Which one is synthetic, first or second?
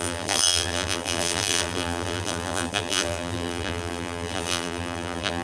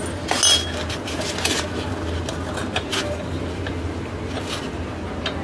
first